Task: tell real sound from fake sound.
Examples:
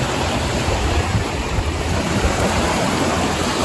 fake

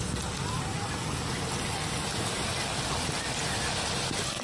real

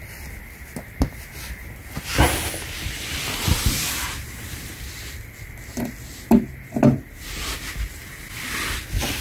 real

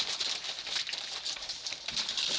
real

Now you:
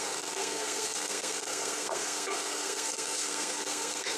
fake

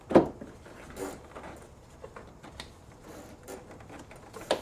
real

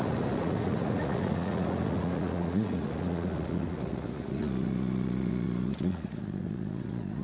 fake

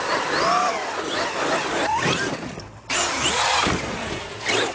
real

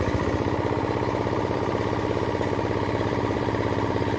fake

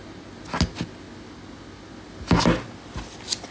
real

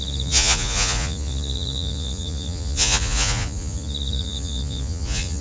fake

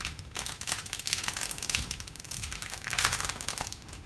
fake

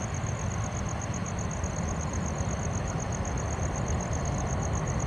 real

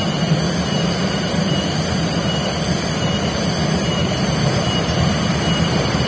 real